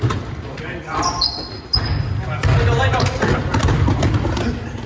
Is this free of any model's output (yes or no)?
yes